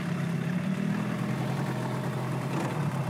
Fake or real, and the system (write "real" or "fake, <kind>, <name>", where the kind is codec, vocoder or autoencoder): real